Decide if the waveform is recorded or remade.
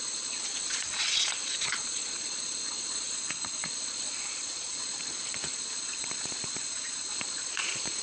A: remade